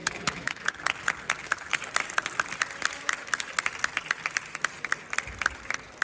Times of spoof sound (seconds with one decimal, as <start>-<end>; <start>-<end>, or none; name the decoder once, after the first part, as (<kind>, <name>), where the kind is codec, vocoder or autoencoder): 0.0-0.7 (autoencoder, DAC-VAE)